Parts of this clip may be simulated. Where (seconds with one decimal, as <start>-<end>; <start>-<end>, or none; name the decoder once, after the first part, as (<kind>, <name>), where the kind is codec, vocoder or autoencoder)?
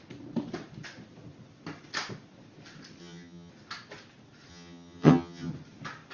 3.0-3.5 (vocoder, HiFi-GAN); 4.5-5.5